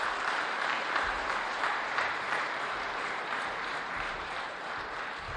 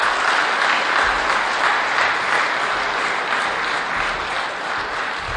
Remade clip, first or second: first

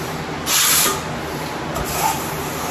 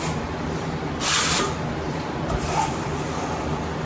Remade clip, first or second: second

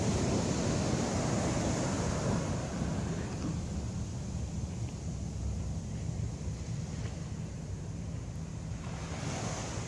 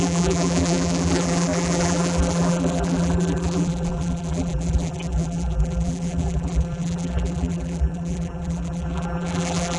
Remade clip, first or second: second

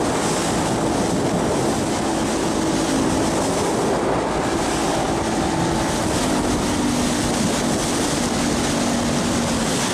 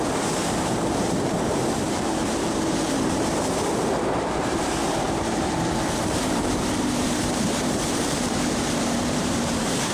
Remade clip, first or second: second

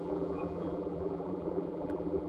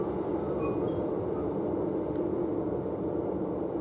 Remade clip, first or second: first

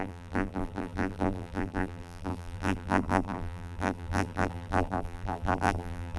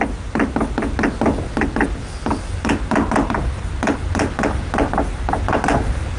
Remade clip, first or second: first